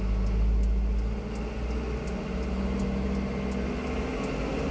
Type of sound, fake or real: real